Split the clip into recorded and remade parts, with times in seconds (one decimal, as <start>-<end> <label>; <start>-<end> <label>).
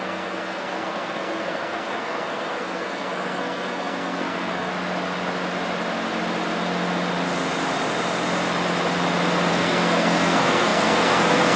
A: 0.0-4.7 remade; 4.7-9.5 recorded; 9.5-11.6 remade